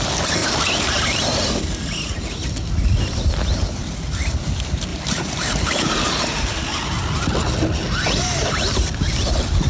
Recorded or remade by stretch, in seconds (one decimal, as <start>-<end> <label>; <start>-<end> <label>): 0.0-0.4 recorded; 0.4-1.5 remade; 1.5-4.9 recorded; 4.9-6.6 remade; 6.6-8.4 recorded; 8.4-8.9 remade; 8.9-9.7 recorded